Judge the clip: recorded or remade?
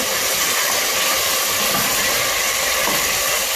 recorded